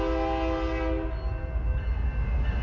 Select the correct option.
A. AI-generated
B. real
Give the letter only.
B